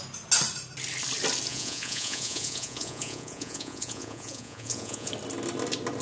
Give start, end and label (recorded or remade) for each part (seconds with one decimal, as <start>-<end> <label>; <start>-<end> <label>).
0.0-1.5 recorded; 1.5-5.1 remade; 5.1-6.0 recorded